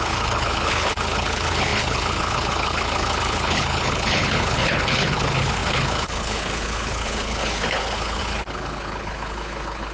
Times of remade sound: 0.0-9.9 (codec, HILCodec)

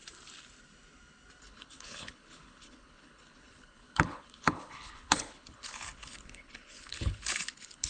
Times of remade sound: 1.4-7.9 (codec, HILCodec)

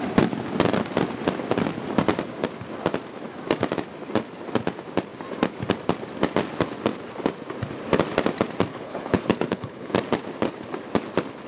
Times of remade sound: 8.7-9.9 (codec, HILCodec)

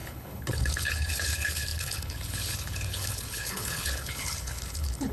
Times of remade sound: 0.0-5.1 (codec, HILCodec)